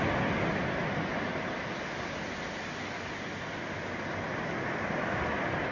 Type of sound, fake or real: real